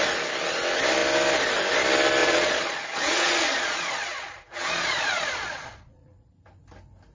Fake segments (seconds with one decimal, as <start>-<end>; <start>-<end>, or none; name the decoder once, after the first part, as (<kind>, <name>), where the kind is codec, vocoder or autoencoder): 2.2-6.3 (vocoder, Vocos)